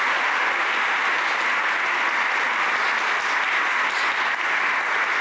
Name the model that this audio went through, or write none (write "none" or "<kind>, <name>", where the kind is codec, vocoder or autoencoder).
none